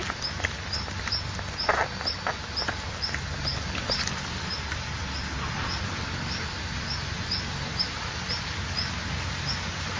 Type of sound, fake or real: real